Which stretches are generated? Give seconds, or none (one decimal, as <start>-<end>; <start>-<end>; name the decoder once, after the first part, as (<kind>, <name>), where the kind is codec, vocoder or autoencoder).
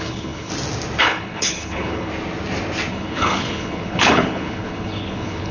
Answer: 0.0-0.5 (codec, HILCodec); 1.0-2.1; 2.9-5.5